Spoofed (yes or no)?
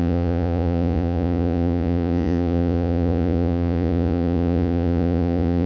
yes